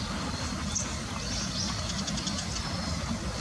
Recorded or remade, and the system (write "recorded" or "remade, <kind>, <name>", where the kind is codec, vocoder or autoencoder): recorded